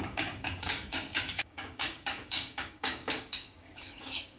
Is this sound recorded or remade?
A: remade